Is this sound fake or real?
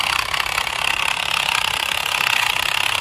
real